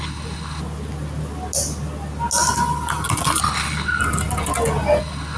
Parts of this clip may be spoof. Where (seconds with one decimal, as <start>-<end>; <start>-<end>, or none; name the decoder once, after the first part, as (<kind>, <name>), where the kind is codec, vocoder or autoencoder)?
0.0-0.6 (codec, HILCodec); 3.4-4.0; 5.0-5.4